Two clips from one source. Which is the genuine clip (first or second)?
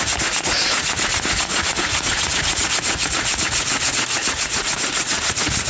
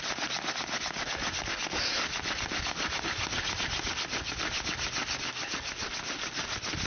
second